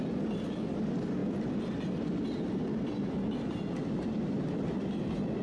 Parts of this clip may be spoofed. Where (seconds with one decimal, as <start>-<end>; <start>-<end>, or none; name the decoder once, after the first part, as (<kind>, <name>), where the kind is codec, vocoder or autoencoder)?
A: none